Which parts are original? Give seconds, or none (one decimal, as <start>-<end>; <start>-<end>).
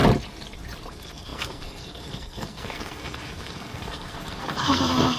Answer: 0.0-0.9